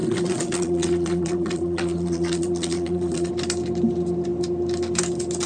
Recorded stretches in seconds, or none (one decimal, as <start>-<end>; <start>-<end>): 3.3-5.5